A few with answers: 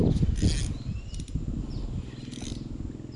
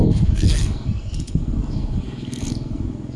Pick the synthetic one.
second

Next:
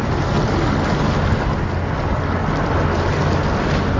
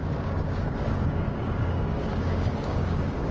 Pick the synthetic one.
second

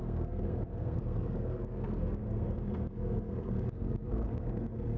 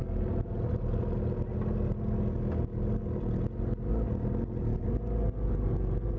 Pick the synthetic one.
first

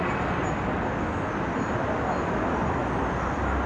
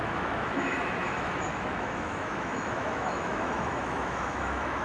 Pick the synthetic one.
second